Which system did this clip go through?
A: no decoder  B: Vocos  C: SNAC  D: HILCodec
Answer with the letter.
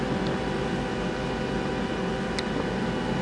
A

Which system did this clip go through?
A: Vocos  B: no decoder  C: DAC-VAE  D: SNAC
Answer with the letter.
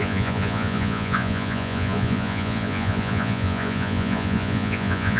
A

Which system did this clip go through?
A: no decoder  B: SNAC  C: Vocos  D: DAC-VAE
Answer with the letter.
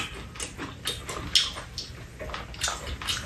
A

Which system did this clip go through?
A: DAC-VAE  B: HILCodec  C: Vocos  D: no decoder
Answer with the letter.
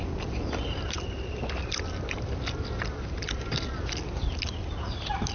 D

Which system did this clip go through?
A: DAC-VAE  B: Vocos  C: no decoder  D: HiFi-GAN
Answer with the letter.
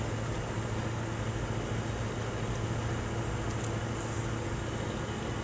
C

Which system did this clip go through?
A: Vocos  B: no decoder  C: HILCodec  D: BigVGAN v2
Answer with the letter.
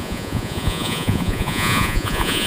A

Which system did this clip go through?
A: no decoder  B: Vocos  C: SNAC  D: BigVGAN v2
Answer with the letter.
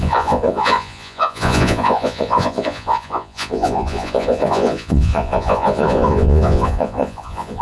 B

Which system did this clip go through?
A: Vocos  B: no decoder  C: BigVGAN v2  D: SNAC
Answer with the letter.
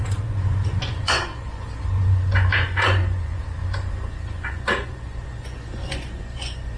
A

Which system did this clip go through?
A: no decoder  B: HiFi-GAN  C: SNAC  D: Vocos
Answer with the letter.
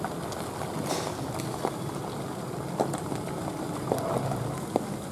A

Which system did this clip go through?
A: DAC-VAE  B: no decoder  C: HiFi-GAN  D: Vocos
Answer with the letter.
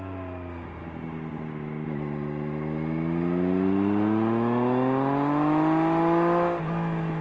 B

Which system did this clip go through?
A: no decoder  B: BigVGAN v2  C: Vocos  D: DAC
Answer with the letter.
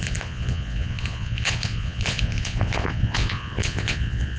C